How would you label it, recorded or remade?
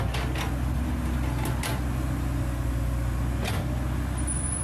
recorded